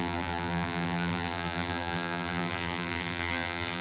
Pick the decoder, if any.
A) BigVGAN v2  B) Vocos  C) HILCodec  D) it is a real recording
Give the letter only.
A